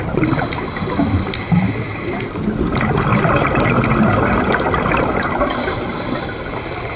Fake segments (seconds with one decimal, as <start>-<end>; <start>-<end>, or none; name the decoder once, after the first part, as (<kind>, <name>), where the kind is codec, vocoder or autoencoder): none